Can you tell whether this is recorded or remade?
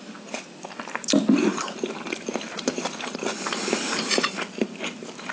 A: remade